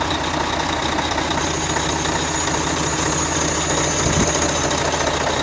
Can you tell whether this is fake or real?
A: real